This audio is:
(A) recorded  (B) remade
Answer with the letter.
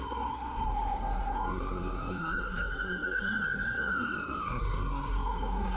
B